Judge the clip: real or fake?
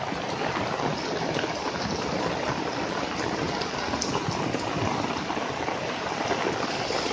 real